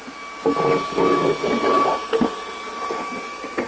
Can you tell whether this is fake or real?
real